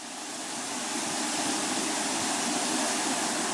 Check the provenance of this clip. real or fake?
real